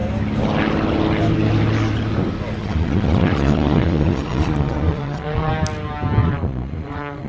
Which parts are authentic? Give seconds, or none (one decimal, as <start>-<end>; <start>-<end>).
0.0-2.6; 5.5-6.2